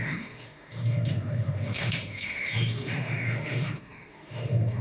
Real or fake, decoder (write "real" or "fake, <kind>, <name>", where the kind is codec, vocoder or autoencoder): fake, autoencoder, DAC-VAE